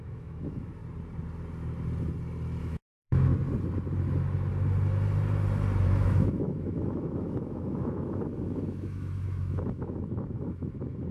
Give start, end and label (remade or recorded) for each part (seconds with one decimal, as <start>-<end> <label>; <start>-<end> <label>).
0.0-0.8 remade; 0.8-2.6 recorded; 2.6-3.3 remade; 3.3-5.8 recorded; 5.8-11.1 remade